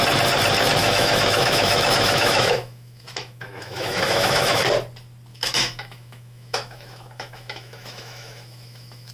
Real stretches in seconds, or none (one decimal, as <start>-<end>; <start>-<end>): 0.0-0.8; 4.6-5.3